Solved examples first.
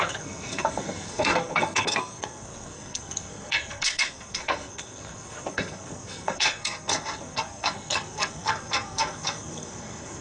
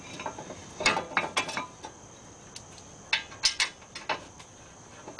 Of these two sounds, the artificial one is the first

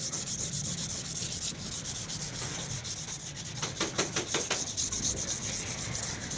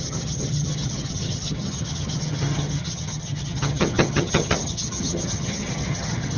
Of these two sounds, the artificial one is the second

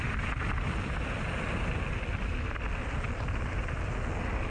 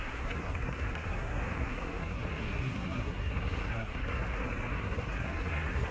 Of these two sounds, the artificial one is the second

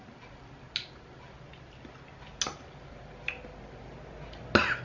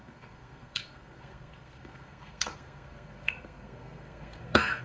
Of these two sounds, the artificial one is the second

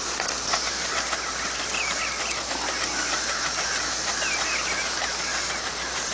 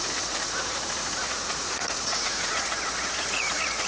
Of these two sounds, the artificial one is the second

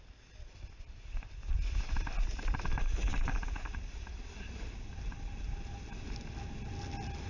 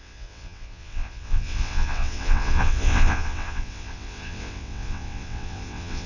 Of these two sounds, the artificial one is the second